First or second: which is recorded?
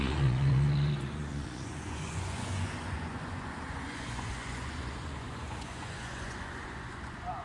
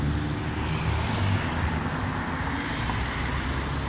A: second